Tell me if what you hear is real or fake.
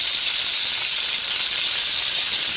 real